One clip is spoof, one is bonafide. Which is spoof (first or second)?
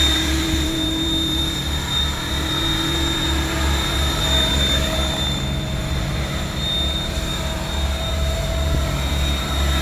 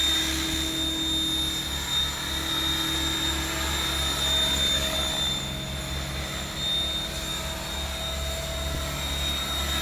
first